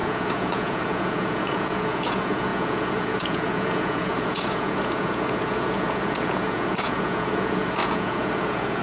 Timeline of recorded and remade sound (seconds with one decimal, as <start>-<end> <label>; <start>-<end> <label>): 0.0-8.8 remade